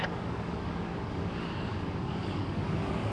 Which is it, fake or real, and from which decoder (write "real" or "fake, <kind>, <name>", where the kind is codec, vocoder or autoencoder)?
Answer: fake, codec, DAC